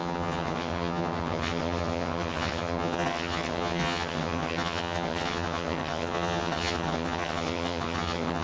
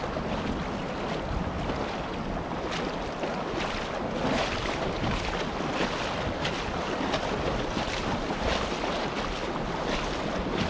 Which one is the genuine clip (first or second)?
second